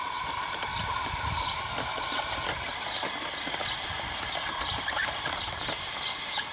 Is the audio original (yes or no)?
yes